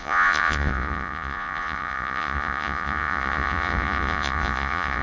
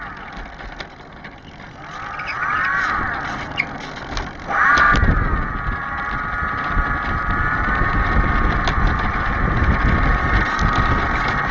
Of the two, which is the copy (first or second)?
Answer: first